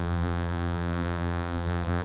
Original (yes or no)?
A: no